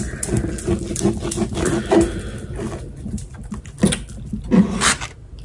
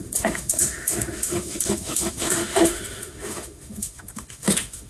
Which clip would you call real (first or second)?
first